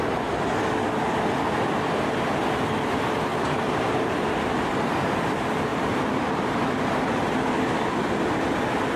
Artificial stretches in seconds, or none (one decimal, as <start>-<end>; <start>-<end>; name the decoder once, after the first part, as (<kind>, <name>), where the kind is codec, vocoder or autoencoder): 3.3-5.2 (vocoder, BigVGAN v2); 5.7-7.8